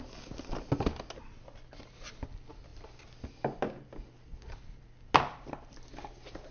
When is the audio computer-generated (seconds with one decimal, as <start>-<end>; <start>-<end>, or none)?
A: none